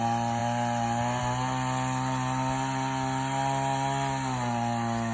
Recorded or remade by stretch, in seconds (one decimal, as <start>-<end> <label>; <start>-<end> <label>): 0.0-5.1 recorded